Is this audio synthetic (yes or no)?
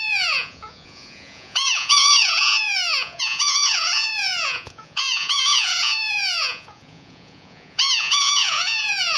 yes